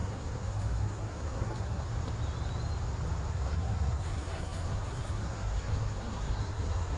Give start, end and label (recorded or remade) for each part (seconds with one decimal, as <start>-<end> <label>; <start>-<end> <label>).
0.0-1.9 remade; 1.9-3.3 recorded; 3.3-7.0 remade